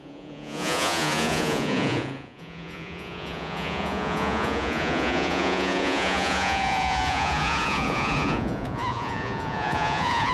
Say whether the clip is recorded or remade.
remade